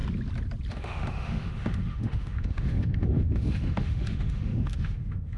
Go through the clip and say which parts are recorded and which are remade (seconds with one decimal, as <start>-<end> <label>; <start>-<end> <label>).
0.0-0.7 recorded; 0.7-5.4 remade